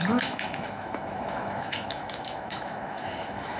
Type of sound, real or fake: fake